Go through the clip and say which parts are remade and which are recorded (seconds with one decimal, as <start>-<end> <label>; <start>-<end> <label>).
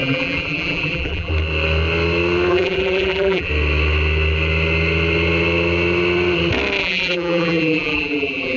0.0-1.3 remade; 1.3-2.5 recorded; 2.5-3.5 remade; 3.5-6.8 recorded; 6.8-8.6 remade